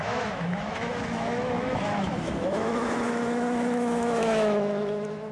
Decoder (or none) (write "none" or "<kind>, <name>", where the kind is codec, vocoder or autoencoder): autoencoder, DAC-VAE